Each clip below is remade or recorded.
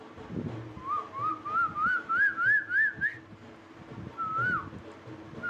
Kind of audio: recorded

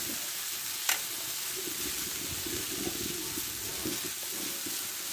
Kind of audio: recorded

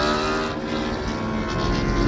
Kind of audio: recorded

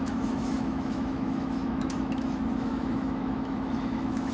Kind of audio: remade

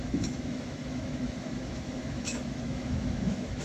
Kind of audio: remade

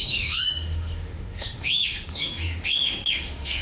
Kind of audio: remade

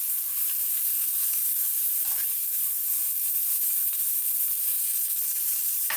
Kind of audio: remade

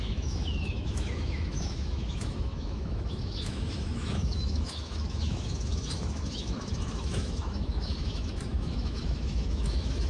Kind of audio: remade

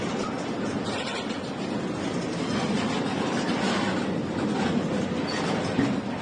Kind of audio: recorded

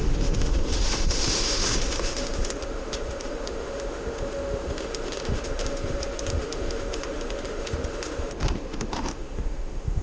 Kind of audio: remade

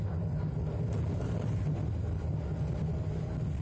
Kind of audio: recorded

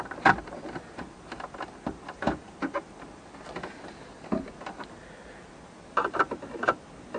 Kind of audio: recorded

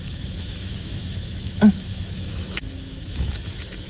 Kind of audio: remade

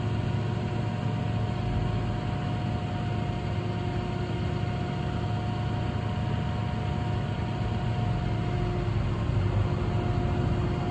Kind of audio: recorded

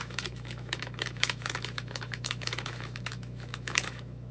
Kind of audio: remade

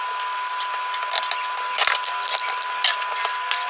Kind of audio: recorded